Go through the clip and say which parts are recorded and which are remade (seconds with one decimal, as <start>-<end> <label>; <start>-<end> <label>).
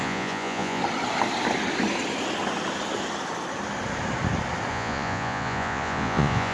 0.0-0.8 remade; 0.8-4.7 recorded; 4.7-6.5 remade